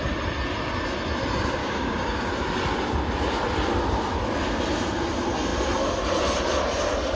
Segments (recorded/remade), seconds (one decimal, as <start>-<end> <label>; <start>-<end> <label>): 0.0-1.6 recorded; 1.6-2.3 remade; 2.3-7.2 recorded